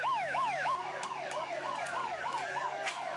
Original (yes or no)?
no